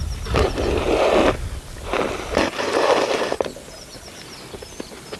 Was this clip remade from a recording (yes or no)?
no